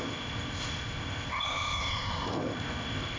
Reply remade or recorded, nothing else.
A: remade